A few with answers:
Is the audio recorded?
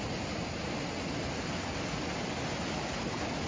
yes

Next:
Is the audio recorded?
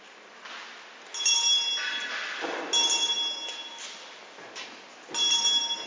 yes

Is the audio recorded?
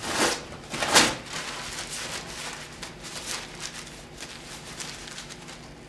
yes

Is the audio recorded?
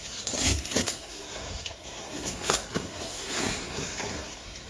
no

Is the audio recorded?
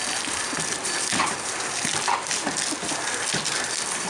yes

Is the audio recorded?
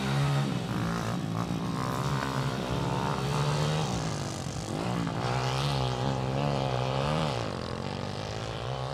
no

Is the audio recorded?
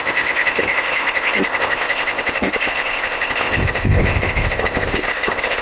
no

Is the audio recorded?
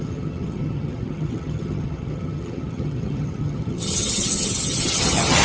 no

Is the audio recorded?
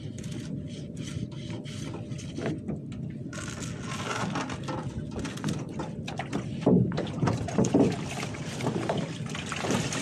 yes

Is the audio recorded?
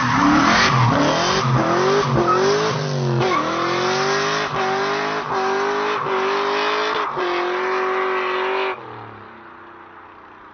yes